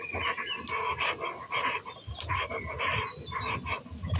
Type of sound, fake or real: real